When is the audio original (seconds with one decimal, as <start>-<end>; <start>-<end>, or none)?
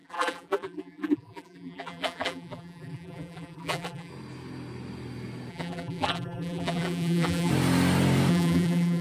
4.1-5.5; 7.5-8.3